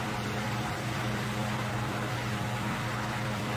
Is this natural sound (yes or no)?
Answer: no